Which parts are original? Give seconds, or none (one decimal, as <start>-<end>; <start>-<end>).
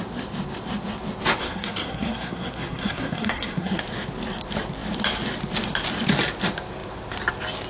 0.0-1.4; 3.8-7.7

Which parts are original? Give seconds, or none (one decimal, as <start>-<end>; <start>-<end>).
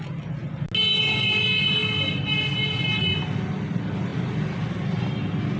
0.0-5.6